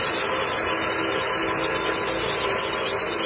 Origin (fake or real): real